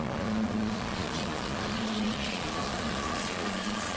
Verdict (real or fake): fake